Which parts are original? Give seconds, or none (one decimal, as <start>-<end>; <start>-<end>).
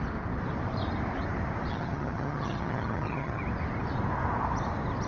0.0-1.7; 3.4-5.1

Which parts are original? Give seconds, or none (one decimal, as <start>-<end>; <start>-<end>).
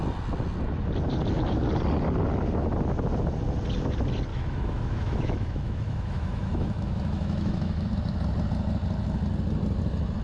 0.0-4.3; 7.9-10.2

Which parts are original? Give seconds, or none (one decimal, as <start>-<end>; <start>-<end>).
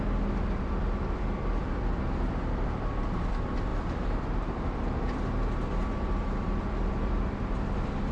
none